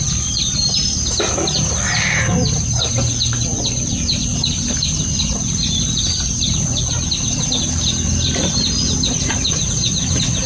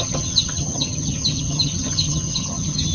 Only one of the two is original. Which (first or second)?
first